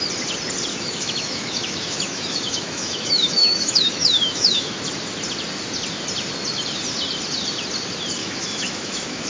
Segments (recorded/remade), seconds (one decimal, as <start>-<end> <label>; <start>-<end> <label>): 0.0-0.7 recorded; 0.7-4.7 remade; 4.7-8.2 recorded; 8.2-9.3 remade